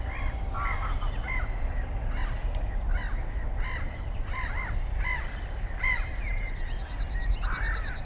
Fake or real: real